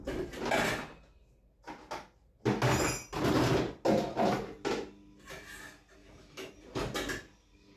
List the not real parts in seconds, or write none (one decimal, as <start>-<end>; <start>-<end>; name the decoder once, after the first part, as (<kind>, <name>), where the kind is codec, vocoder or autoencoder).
6.0-6.5 (autoencoder, DAC-VAE)